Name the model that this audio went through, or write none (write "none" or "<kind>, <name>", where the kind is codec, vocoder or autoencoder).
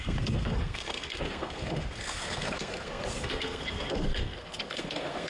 codec, SNAC